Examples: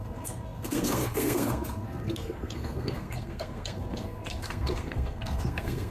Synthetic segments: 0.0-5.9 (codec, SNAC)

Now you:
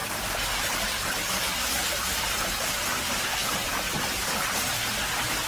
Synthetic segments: none

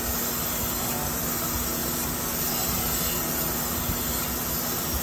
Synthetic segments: none

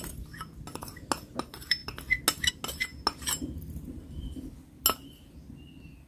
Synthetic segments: none

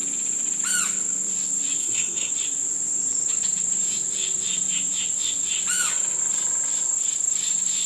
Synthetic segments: 1.8-2.3 (codec, SNAC)

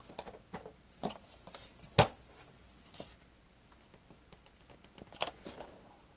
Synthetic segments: none